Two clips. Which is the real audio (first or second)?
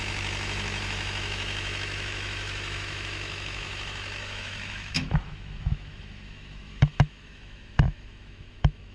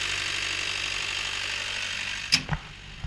second